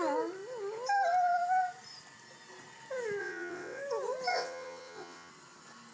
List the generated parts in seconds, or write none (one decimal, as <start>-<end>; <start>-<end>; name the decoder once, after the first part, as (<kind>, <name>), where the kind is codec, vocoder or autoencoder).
3.2-3.8 (vocoder, WaveNeXt); 4.3-5.3